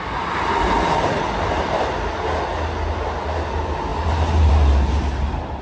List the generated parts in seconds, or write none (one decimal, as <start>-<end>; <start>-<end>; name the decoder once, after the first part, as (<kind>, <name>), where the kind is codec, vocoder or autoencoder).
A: none